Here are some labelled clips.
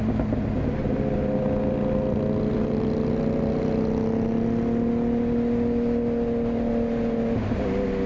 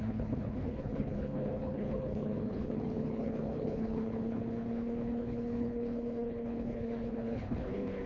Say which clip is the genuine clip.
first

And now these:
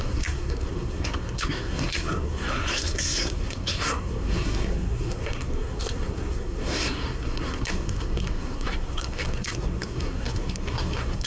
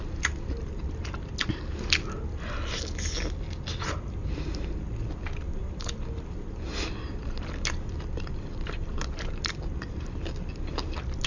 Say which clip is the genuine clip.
second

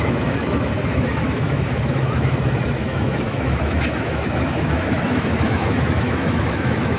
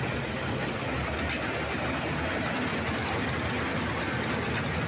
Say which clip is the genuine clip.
second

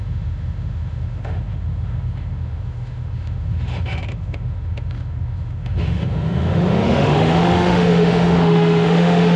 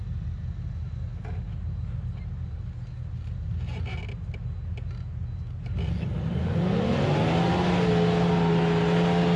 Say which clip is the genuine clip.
second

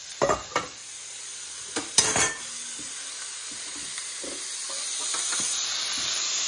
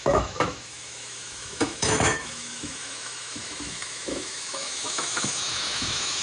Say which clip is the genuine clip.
first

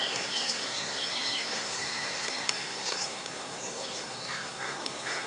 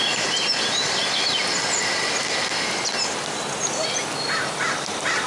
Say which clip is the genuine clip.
second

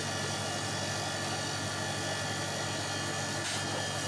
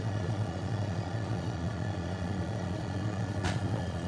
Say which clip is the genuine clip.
first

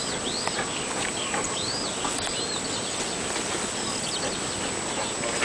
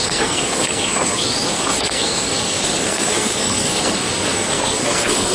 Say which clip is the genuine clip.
first